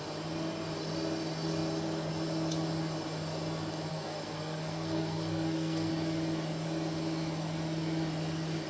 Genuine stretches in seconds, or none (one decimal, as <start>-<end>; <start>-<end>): 0.0-3.9; 5.9-8.7